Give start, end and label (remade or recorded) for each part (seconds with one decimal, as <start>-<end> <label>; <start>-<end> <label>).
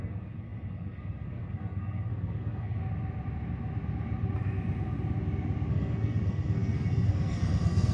0.0-2.8 remade; 2.8-5.7 recorded; 5.7-7.9 remade